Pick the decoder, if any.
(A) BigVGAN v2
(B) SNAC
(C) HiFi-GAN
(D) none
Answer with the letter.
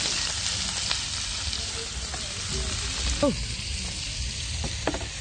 D